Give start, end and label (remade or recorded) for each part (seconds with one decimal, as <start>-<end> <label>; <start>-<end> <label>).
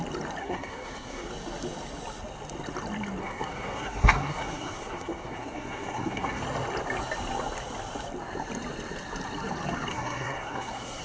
0.0-0.4 recorded; 0.4-1.3 remade; 1.3-3.2 recorded; 3.2-6.4 remade; 6.4-9.9 recorded; 9.9-11.0 remade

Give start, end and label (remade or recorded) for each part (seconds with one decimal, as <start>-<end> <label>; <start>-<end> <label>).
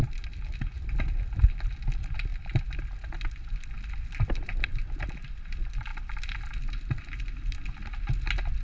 0.0-8.6 recorded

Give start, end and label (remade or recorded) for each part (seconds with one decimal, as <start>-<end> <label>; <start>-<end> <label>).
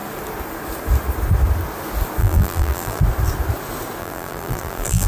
0.0-2.2 recorded; 2.2-3.0 remade; 3.0-4.0 recorded; 4.0-5.1 remade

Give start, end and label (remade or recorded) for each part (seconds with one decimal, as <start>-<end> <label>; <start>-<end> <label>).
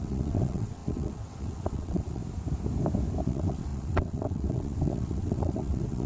0.0-2.2 remade; 2.2-3.2 recorded; 3.2-6.1 remade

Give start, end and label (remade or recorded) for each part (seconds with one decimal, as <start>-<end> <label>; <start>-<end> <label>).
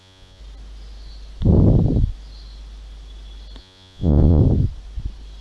0.0-0.4 remade; 0.4-3.6 recorded; 3.6-4.4 remade; 4.4-5.4 recorded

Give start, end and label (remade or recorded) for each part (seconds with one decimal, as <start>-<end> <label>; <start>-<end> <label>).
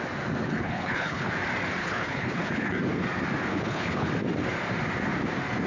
0.0-0.4 recorded; 0.4-1.3 remade; 1.3-1.8 recorded; 1.8-2.8 remade; 2.8-3.5 recorded; 3.5-4.1 remade; 4.1-5.7 recorded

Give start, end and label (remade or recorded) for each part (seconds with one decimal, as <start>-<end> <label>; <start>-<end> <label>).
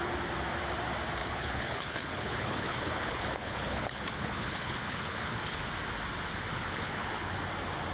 0.0-1.2 recorded; 1.2-5.6 remade; 5.6-6.5 recorded; 6.5-7.3 remade; 7.3-7.9 recorded